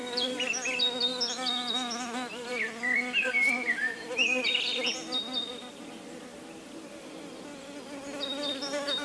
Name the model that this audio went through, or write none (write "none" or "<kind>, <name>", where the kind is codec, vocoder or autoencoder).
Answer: none